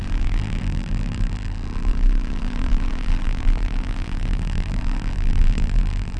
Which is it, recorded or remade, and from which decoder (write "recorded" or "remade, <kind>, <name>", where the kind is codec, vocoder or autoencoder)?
remade, vocoder, BigVGAN v2